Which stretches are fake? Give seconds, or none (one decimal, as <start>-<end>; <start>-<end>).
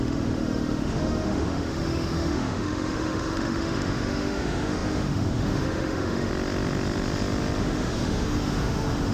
0.0-6.3; 7.6-9.1